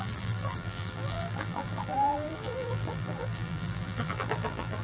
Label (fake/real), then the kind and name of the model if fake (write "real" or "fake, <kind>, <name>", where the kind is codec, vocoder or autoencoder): fake, vocoder, BigVGAN v2